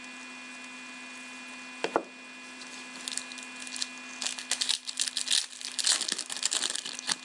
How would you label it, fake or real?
real